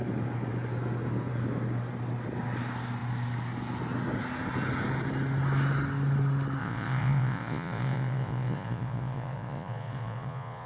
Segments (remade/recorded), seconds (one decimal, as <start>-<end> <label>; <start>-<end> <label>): 0.0-6.6 recorded; 6.6-10.7 remade